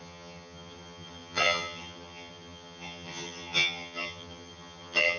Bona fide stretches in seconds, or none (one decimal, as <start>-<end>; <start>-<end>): none